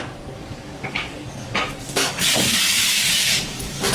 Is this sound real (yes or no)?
no